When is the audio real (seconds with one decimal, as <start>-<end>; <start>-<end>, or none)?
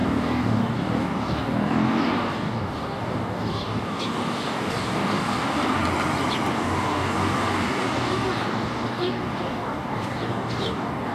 5.8-6.5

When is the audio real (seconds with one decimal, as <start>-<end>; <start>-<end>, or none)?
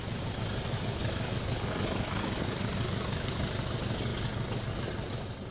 0.0-1.0; 3.3-5.5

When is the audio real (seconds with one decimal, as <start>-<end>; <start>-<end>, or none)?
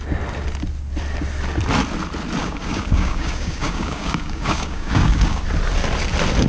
0.0-2.4; 5.4-6.5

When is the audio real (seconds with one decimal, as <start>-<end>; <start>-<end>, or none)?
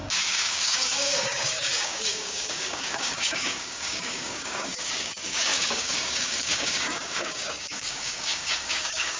none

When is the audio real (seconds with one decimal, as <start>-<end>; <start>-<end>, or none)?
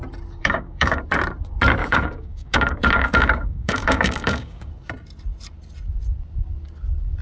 0.0-0.4; 1.0-1.8; 4.7-7.2